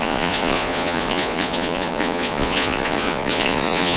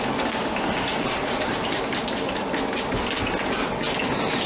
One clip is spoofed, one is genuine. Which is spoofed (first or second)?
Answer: first